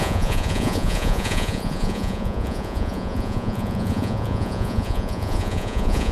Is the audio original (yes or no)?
no